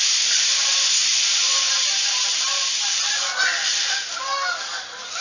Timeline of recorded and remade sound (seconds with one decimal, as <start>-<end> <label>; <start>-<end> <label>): 0.0-5.2 recorded